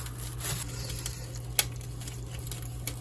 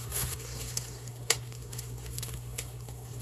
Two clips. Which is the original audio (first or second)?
first